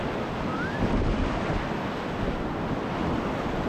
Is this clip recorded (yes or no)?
yes